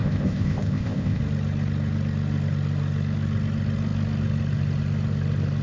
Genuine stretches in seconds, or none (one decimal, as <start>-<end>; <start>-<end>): 1.2-5.6